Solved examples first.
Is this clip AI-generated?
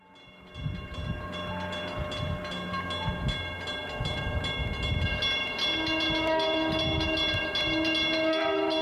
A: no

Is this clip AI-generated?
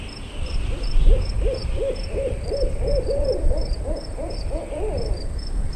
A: yes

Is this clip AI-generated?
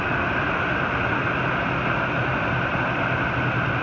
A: no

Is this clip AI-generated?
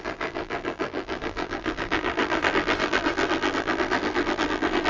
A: yes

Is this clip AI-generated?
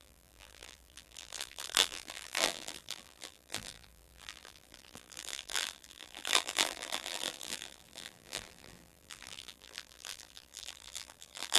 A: yes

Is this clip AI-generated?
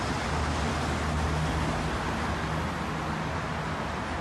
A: no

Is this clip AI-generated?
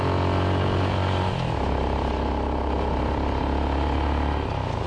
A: no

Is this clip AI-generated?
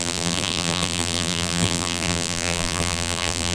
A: yes